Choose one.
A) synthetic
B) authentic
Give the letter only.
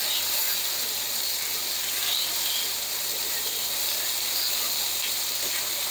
B